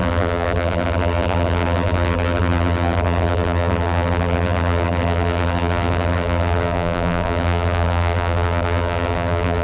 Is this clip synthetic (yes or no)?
yes